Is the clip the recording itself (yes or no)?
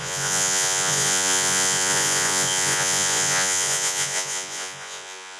no